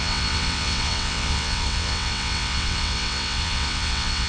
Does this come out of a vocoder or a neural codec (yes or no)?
yes